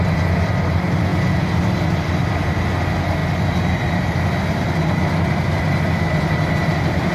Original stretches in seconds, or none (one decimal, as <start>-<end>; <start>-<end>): 0.0-7.1